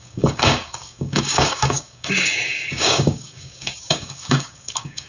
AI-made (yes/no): yes